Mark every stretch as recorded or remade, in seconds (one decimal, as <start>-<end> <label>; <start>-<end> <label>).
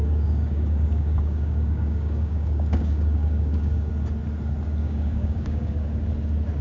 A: 0.0-3.9 remade; 3.9-4.8 recorded; 4.8-5.7 remade; 5.7-6.6 recorded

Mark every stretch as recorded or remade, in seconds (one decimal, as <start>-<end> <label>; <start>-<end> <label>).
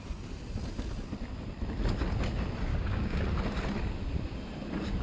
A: 0.0-2.7 recorded; 2.7-3.2 remade; 3.2-5.0 recorded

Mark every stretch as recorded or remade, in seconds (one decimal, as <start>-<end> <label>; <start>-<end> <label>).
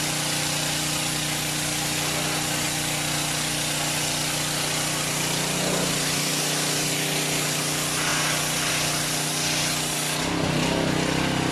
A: 0.0-11.5 recorded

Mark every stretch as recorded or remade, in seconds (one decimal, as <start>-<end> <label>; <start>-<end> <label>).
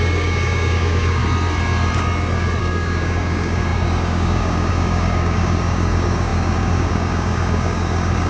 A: 0.0-1.2 remade; 1.2-2.6 recorded; 2.6-8.3 remade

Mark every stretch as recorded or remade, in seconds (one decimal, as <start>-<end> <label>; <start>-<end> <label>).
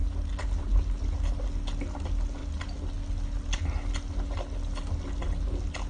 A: 0.0-5.9 recorded